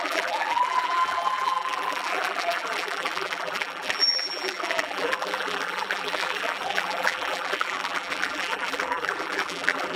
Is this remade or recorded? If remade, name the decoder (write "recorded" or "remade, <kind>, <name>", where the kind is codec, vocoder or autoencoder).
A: remade, vocoder, BigVGAN v2